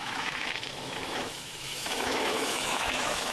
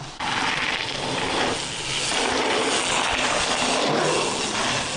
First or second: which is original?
second